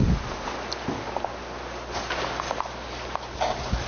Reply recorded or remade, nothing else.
recorded